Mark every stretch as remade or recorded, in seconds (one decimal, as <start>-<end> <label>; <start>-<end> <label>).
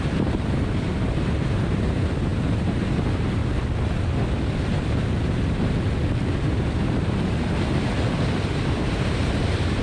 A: 0.0-3.4 remade; 3.4-6.9 recorded; 6.9-9.8 remade